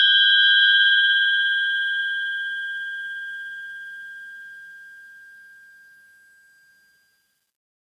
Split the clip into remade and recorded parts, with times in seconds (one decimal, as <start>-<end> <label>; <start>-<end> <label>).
0.0-7.8 recorded